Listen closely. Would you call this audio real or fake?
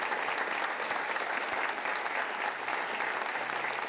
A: real